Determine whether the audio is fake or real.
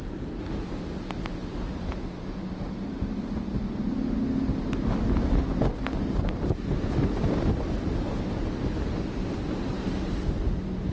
real